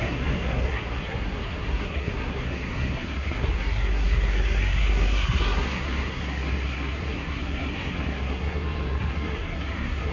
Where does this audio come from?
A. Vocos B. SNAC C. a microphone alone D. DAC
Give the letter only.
B